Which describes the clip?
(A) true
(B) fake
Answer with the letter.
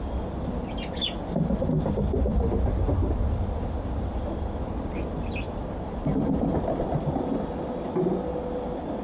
A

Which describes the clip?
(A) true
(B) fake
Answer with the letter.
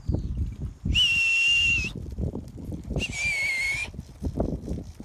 A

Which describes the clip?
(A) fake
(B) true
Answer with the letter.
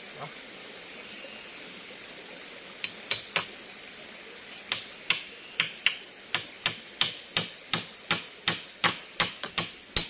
B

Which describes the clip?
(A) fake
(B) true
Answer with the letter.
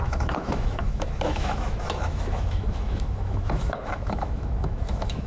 A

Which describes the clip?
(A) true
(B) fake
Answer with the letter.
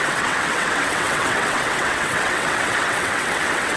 B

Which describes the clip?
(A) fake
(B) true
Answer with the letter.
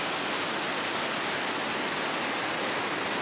B